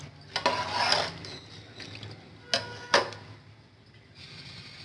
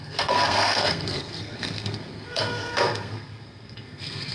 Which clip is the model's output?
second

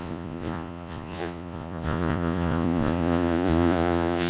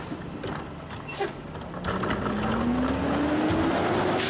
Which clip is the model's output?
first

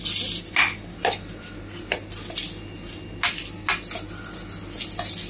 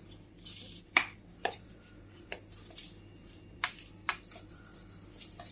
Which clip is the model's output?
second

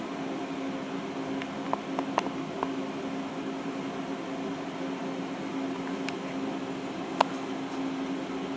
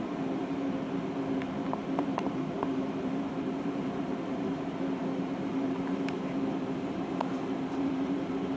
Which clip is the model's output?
second